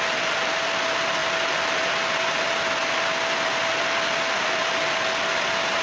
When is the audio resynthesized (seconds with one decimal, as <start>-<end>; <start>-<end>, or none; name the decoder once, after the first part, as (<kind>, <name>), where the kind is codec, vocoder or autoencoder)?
none